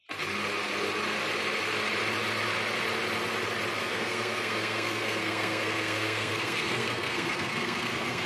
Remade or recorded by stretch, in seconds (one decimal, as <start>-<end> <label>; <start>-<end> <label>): 0.0-3.8 recorded; 3.8-8.3 remade